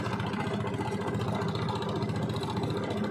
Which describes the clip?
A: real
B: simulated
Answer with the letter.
A